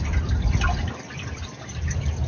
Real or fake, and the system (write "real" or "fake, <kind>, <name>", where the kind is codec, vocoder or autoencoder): real